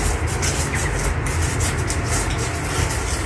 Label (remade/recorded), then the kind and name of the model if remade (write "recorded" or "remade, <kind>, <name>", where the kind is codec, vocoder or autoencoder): recorded